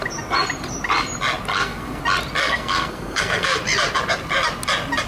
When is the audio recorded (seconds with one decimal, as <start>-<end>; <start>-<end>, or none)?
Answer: 0.0-1.5; 2.0-2.4; 3.6-5.1